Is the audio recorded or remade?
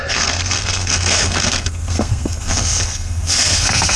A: remade